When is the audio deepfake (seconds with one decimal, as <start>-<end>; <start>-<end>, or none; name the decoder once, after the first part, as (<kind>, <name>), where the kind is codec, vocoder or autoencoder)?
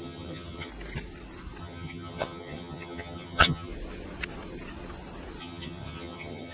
0.0-0.7 (vocoder, HiFi-GAN); 1.6-3.7; 5.4-6.5